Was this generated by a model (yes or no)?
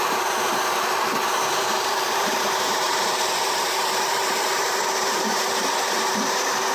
yes